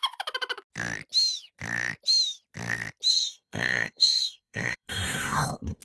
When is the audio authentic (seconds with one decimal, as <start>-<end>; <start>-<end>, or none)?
0.0-3.1